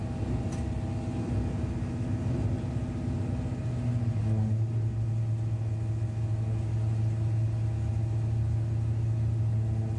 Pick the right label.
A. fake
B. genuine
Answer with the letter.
B